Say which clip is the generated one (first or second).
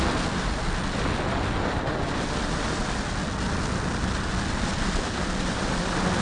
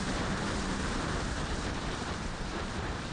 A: second